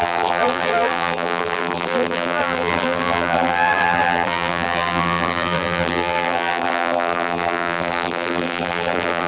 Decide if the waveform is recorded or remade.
remade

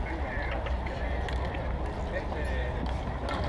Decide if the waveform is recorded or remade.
recorded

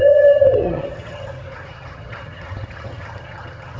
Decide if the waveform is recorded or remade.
remade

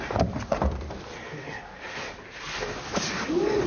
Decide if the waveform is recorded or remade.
recorded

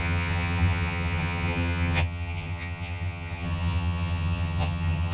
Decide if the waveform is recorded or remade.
remade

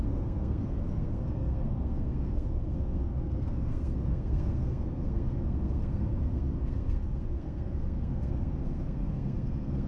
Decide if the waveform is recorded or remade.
remade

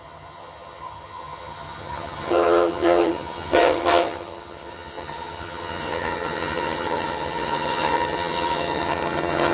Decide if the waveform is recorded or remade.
remade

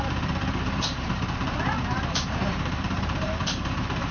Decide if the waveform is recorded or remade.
remade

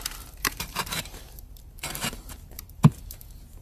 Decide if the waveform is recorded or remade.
remade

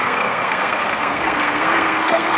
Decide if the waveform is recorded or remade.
remade